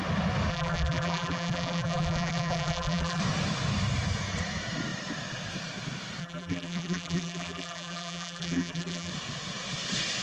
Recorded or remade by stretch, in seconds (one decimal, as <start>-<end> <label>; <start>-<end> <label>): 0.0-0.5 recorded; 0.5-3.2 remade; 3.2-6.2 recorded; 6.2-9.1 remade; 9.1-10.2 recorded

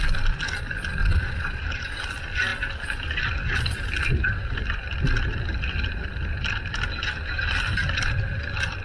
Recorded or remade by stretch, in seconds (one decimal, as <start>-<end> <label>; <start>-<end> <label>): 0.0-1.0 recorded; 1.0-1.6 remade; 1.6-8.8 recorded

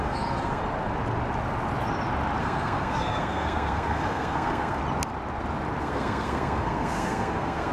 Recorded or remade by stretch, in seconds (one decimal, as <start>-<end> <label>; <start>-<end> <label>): 0.0-0.6 remade; 0.6-2.4 recorded; 2.4-4.8 remade; 4.8-5.8 recorded; 5.8-7.7 remade

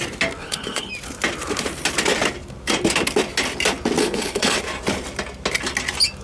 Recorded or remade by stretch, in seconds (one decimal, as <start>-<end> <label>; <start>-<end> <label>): 0.0-0.4 recorded; 0.4-0.9 remade; 0.9-4.0 recorded; 4.0-4.6 remade; 4.6-6.2 recorded

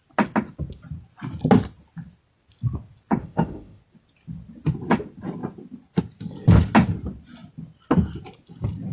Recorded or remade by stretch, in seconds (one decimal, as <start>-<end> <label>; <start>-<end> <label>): 0.0-3.2 recorded; 3.2-3.8 remade; 3.8-8.9 recorded

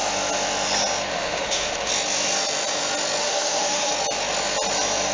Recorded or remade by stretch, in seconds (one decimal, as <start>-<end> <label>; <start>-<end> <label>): 0.0-1.1 recorded; 1.1-1.9 remade; 1.9-3.2 recorded; 3.2-3.9 remade; 3.9-5.1 recorded

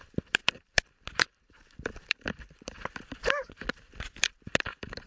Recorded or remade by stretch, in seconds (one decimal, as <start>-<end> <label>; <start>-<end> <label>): 0.0-0.4 recorded; 0.4-3.5 remade; 3.5-5.1 recorded

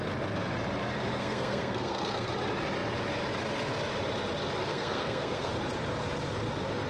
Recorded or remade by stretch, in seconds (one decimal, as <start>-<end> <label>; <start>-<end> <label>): 0.0-1.1 recorded; 1.1-2.3 remade; 2.3-4.7 recorded; 4.7-5.5 remade; 5.5-6.9 recorded